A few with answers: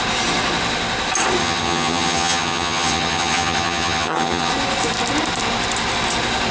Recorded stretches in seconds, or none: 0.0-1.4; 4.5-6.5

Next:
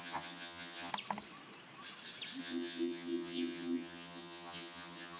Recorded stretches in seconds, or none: 0.9-2.4

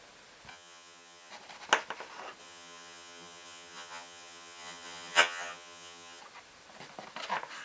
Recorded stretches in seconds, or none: 0.0-0.5; 1.3-2.4; 6.2-7.6

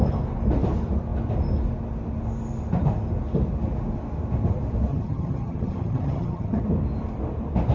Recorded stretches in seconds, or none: 0.0-4.9; 6.6-7.7